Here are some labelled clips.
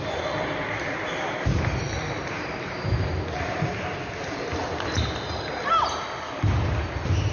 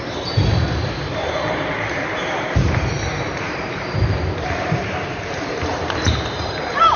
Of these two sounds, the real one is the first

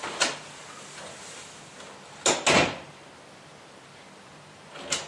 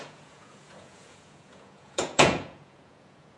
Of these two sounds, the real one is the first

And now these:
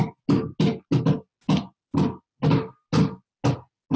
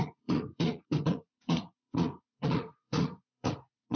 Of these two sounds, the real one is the first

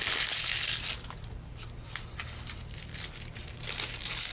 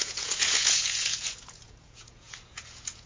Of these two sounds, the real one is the first